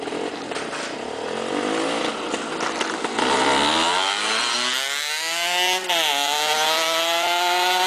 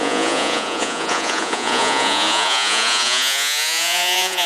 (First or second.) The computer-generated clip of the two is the second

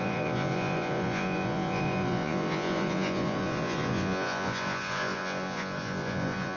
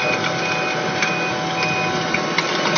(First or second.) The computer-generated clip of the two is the first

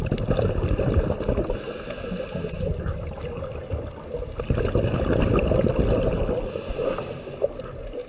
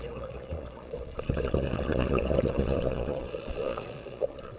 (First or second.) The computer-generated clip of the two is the second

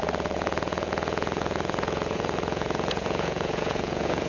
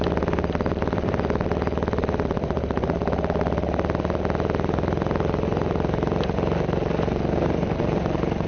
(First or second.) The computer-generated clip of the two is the first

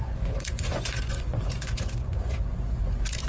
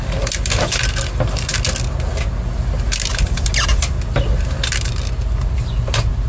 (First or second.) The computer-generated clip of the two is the first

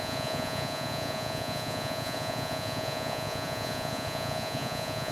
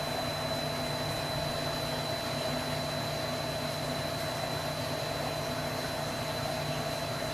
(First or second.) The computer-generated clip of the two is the first